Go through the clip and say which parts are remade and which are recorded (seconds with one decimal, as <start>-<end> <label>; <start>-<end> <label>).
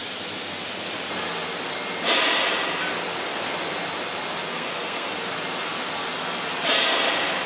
0.0-4.5 recorded; 4.5-5.1 remade; 5.1-7.5 recorded